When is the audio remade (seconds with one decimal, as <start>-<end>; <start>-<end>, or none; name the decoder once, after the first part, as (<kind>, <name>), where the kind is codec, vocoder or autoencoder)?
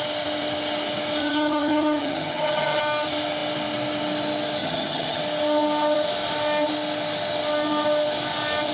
1.2-2.8 (vocoder, HiFi-GAN); 4.6-5.2